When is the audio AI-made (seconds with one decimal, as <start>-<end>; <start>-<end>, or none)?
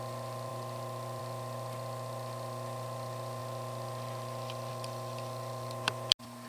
0.5-1.2; 3.4-4.7